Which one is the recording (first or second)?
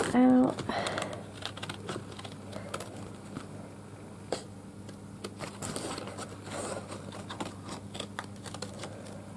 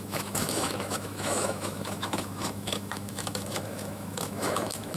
first